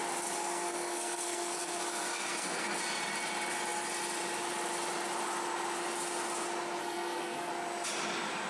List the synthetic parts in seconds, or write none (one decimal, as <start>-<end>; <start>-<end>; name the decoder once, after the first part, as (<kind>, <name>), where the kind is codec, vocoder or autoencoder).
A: 0.4-2.8 (codec, SNAC); 6.8-7.5